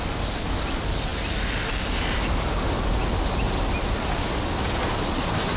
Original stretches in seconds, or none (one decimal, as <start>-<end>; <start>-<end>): 0.0-5.6